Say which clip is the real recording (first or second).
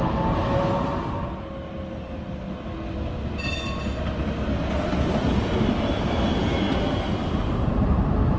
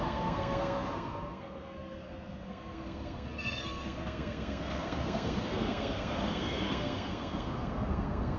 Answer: first